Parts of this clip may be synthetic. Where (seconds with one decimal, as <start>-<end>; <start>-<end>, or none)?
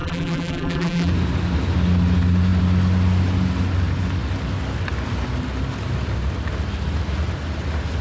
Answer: 0.0-1.1